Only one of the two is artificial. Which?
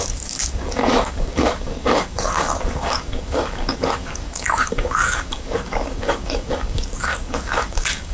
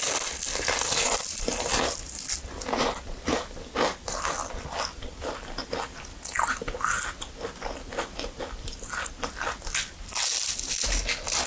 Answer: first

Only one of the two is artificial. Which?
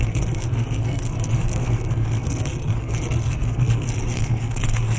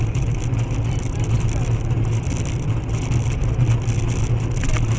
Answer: first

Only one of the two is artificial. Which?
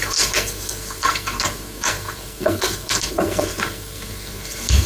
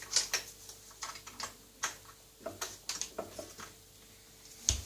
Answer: first